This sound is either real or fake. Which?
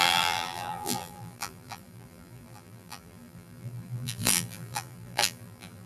fake